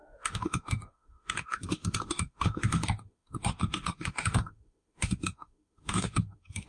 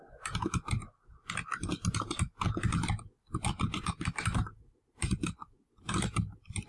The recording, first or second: second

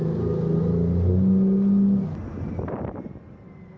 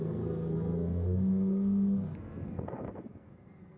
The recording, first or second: first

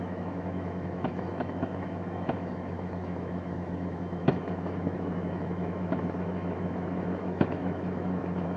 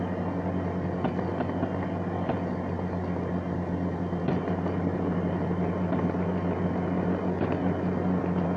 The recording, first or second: second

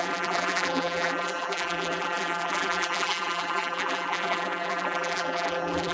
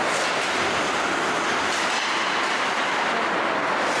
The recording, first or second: second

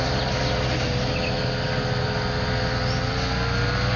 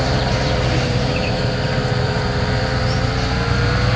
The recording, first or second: first